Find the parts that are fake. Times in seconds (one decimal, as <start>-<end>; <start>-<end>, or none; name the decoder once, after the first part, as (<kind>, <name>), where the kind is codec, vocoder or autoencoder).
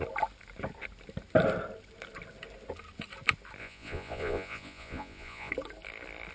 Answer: 3.6-5.5 (vocoder, Vocos)